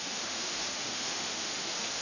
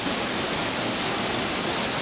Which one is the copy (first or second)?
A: first